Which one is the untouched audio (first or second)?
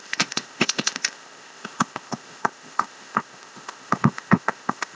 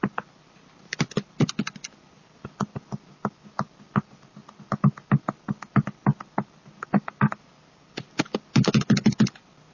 second